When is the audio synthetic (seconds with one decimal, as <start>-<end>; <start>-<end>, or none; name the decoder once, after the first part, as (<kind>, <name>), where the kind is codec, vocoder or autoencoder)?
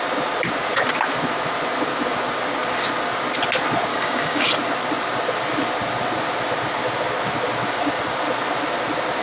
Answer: 3.9-4.5 (codec, DAC)